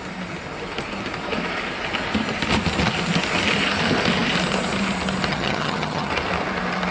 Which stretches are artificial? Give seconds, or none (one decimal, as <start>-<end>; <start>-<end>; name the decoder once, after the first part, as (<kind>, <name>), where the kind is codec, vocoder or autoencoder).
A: 5.3-6.1 (vocoder, HiFi-GAN)